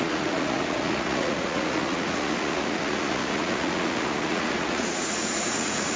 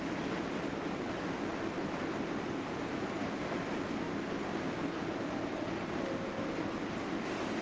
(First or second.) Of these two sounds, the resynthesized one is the first